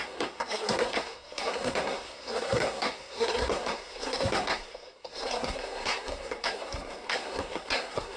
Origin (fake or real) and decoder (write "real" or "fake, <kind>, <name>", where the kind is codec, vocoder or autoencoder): fake, codec, SNAC